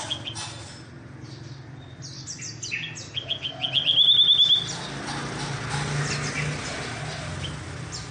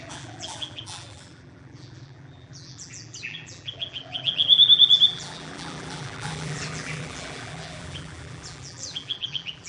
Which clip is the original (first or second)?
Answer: first